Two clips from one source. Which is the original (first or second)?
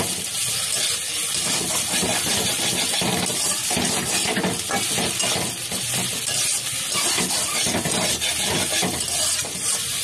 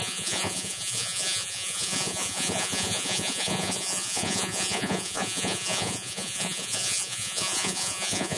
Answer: first